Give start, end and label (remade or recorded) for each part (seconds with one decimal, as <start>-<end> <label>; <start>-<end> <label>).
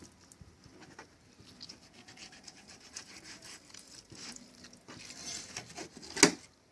0.0-2.2 recorded; 2.2-4.5 remade; 4.5-6.7 recorded